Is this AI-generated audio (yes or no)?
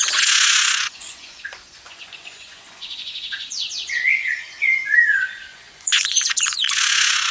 yes